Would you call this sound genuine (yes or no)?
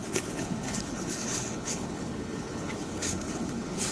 no